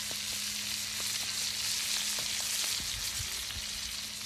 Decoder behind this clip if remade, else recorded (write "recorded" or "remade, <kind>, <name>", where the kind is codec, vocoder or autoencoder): recorded